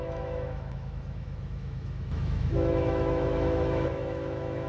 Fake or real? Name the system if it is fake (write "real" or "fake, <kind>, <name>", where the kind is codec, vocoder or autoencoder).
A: fake, autoencoder, DAC-VAE